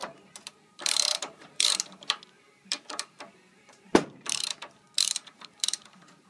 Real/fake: fake